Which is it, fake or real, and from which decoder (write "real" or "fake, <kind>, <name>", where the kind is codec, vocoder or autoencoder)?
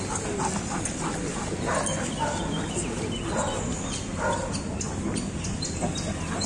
real